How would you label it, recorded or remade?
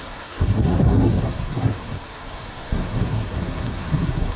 remade